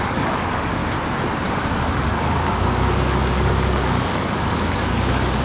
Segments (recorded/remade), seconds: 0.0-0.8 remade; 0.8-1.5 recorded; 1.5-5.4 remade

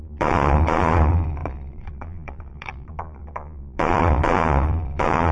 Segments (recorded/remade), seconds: 0.0-5.3 remade

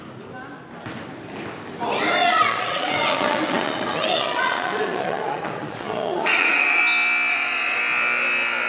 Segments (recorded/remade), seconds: 0.0-2.2 recorded; 2.2-6.8 remade; 6.8-7.3 recorded; 7.3-7.8 remade; 7.8-8.7 recorded